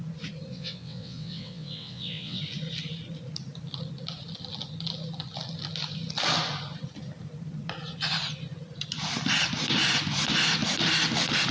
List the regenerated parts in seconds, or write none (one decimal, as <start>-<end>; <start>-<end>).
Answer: 0.5-2.4